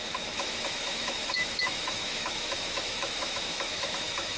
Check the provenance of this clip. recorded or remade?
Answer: remade